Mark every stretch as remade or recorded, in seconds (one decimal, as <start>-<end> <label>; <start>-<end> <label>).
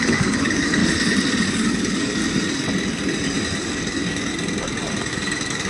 0.0-0.8 remade; 0.8-1.5 recorded; 1.5-2.2 remade; 2.2-3.6 recorded; 3.6-4.3 remade; 4.3-5.1 recorded; 5.1-5.7 remade